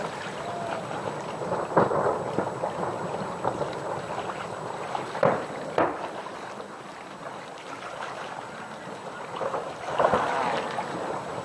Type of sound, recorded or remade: remade